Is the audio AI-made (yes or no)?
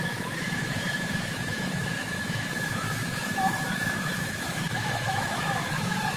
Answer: yes